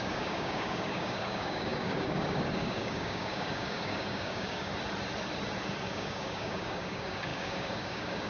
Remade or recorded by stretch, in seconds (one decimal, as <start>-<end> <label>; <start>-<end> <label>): 0.0-4.7 remade; 4.7-5.8 recorded; 5.8-8.3 remade